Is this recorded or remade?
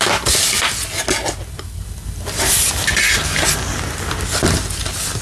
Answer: recorded